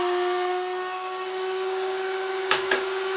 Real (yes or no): no